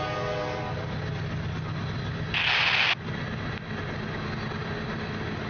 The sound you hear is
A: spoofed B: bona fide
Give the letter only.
B